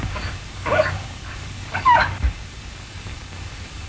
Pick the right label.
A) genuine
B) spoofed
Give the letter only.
B